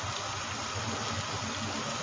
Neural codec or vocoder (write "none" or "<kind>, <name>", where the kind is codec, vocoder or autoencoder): none